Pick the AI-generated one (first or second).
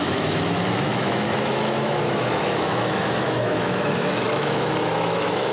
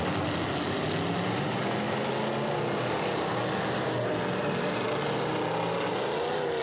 first